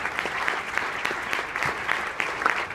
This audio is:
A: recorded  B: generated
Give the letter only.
A